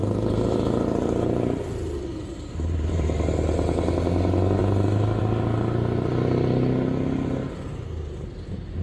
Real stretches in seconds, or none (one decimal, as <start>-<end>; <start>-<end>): 3.2-4.6; 5.2-8.8